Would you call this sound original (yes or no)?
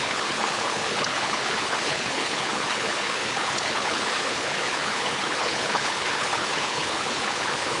no